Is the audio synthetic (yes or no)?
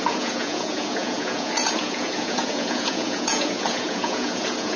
yes